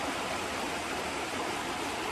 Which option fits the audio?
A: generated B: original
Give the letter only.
B